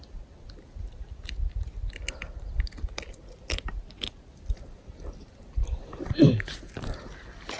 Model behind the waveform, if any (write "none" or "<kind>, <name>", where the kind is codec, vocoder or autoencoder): none